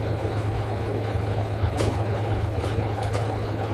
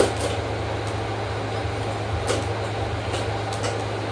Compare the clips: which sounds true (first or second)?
second